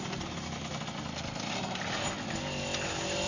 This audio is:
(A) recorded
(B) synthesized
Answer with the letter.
A